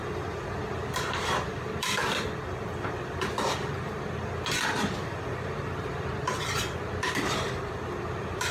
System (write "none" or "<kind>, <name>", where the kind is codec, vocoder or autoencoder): vocoder, BigVGAN v2